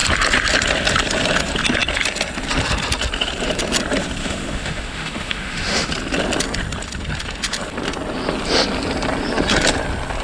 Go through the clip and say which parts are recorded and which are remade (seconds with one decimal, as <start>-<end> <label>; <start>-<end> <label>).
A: 0.0-4.2 recorded; 4.2-5.9 remade; 5.9-10.2 recorded